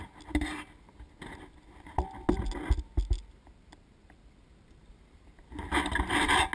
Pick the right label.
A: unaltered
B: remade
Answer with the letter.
A